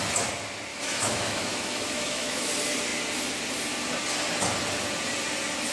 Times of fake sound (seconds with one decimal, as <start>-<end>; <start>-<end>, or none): 0.7-2.5